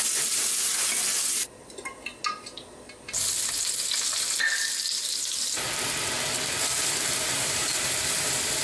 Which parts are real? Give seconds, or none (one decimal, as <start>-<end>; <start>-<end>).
0.0-6.7; 7.7-8.6